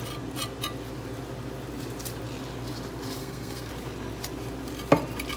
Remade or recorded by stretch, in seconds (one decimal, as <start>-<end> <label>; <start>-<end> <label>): 0.0-3.2 recorded; 3.2-3.7 remade; 3.7-5.4 recorded